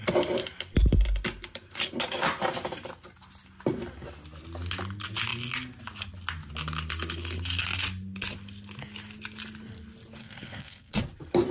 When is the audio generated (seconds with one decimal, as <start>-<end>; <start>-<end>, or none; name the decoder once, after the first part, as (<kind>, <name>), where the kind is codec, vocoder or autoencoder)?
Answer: 10.2-11.0 (codec, SNAC)